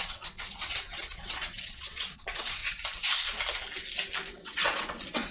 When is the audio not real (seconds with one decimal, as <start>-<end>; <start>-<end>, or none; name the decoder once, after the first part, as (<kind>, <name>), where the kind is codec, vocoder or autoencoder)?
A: 0.0-2.6 (vocoder, WaveNeXt); 4.3-5.3